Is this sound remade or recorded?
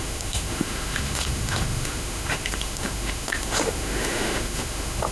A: remade